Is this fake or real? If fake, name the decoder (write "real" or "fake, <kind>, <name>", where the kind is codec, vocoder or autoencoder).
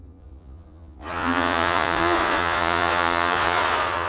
fake, vocoder, Vocos